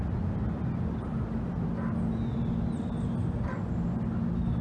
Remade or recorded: recorded